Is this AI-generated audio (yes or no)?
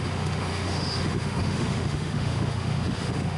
yes